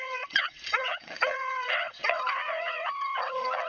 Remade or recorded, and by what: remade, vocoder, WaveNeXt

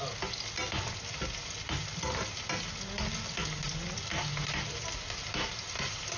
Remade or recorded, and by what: recorded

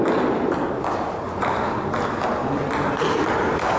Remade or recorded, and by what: recorded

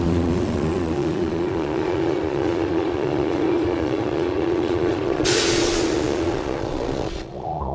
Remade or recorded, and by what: remade, vocoder, Vocos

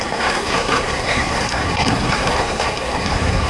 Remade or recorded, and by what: remade, codec, SNAC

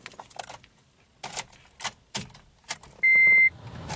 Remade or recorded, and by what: recorded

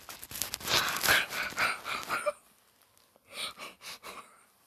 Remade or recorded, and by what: recorded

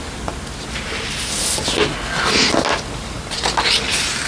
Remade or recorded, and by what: recorded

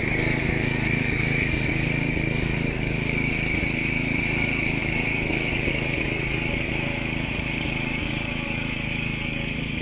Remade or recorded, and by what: remade, codec, DAC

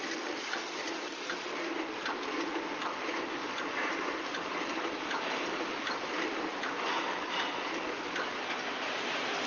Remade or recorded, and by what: recorded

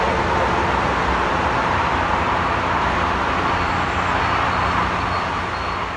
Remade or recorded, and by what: recorded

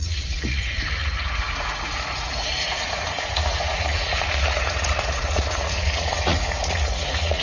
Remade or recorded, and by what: remade, vocoder, Vocos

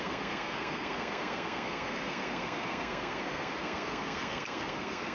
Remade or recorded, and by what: remade, codec, SNAC